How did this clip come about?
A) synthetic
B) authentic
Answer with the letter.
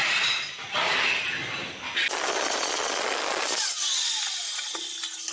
B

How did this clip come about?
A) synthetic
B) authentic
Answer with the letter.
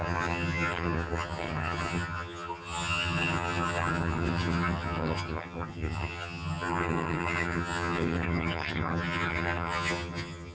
A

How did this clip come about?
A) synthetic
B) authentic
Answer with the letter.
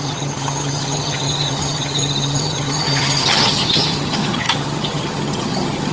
A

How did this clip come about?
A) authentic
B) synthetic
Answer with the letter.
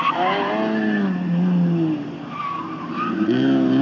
A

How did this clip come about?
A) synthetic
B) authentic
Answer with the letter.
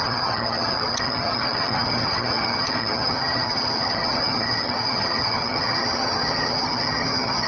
A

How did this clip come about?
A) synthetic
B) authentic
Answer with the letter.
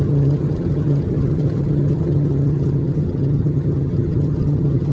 A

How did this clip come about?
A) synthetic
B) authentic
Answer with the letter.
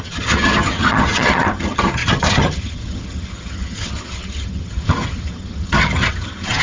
A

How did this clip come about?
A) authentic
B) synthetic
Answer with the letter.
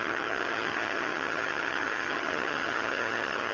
B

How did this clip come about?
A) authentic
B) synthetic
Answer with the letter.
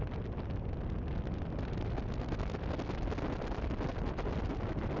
A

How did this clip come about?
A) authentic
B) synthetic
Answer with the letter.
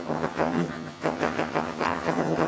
B